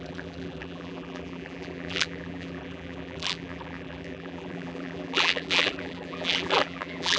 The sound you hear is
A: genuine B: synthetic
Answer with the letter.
B